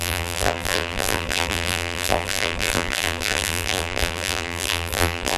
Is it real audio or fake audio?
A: fake